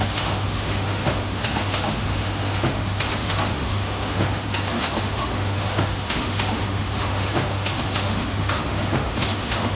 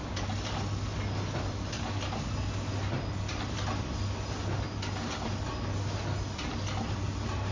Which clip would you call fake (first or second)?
first